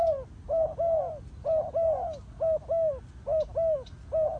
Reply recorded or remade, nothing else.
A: recorded